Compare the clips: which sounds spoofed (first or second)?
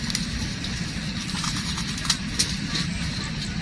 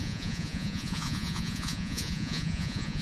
second